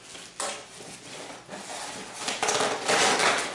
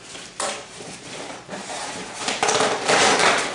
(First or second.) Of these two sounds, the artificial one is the second